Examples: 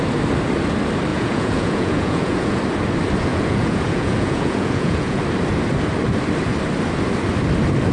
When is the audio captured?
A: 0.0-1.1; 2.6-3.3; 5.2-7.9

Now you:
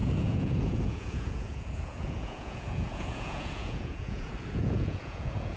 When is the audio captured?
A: none

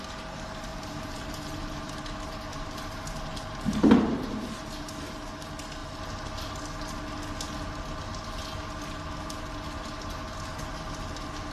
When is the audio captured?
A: 0.0-0.7; 1.9-2.5; 4.5-11.5

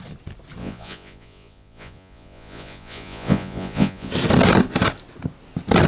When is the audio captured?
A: 0.0-0.6; 4.1-5.9

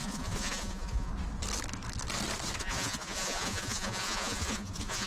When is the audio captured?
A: 1.1-2.6

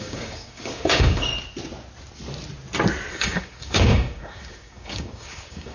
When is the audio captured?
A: 1.3-3.1

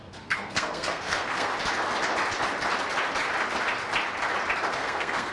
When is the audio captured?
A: 1.5-4.7